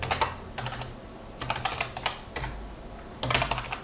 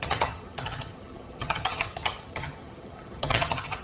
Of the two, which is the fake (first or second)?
second